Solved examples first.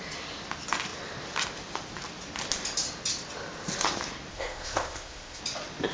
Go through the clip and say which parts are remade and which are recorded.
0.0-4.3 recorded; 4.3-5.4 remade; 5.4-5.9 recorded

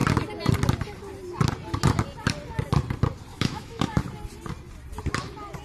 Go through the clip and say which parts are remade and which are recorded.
0.0-3.3 recorded; 3.3-4.0 remade; 4.0-5.6 recorded

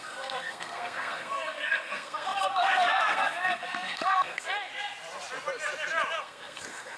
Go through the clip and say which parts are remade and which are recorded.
0.0-4.7 remade; 4.7-6.2 recorded; 6.2-7.0 remade

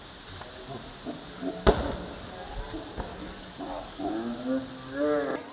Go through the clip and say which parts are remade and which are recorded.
0.0-3.1 recorded; 3.1-4.0 remade; 4.0-5.5 recorded

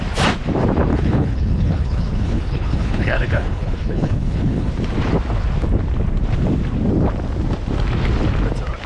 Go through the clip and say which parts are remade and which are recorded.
0.0-0.9 recorded; 0.9-4.7 remade; 4.7-8.9 recorded

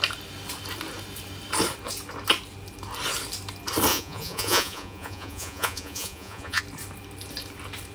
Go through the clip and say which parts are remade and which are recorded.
0.0-3.9 recorded; 3.9-6.6 remade; 6.6-7.9 recorded